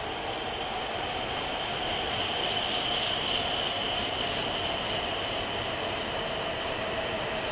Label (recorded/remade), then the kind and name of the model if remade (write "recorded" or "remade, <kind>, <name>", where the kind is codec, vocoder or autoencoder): recorded